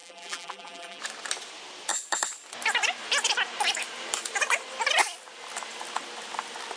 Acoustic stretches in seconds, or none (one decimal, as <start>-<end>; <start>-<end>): 1.0-6.8